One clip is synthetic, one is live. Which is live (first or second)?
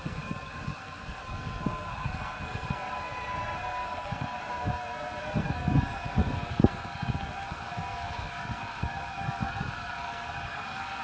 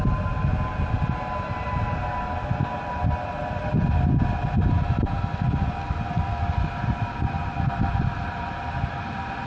second